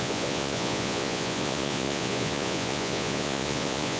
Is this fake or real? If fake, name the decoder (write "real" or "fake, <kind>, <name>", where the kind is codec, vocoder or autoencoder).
fake, vocoder, Vocos